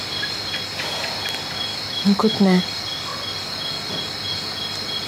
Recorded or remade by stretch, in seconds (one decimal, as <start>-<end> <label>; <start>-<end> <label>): 0.0-1.7 recorded; 1.7-2.6 remade; 2.6-5.1 recorded